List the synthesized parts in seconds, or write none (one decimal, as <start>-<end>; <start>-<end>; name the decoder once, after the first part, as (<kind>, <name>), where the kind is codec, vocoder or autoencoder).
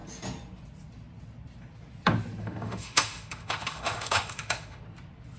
2.4-4.8 (autoencoder, DAC-VAE)